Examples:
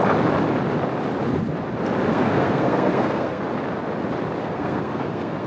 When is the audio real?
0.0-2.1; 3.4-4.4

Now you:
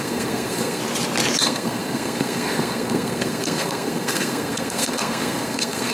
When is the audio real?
0.8-1.4

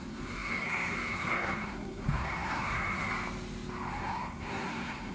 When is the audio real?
3.1-3.9

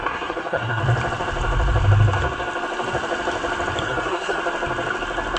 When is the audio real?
0.8-3.8; 4.4-5.4